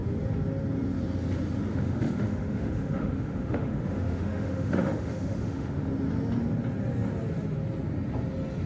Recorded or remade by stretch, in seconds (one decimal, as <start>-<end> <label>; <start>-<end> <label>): 0.0-1.7 recorded; 1.7-5.9 remade; 5.9-8.7 recorded